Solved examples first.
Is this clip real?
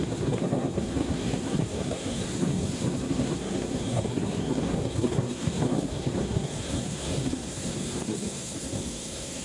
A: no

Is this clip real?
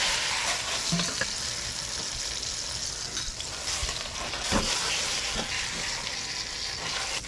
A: yes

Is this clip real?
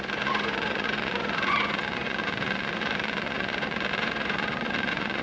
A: no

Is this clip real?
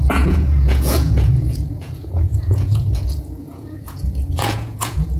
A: no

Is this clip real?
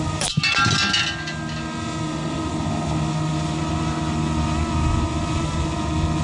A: yes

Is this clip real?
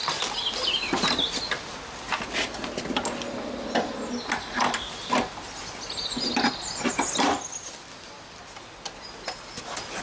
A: yes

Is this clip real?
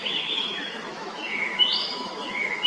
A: no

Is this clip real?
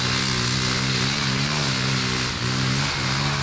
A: yes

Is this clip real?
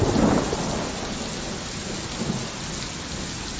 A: yes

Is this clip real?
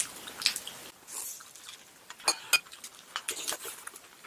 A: yes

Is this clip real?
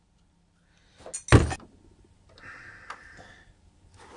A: yes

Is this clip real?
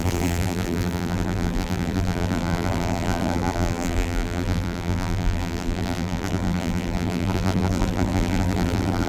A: no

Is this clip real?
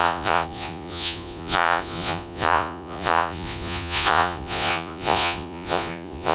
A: no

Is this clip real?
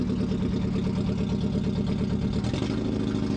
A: yes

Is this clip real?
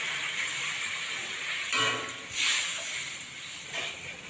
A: no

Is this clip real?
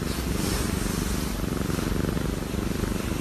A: yes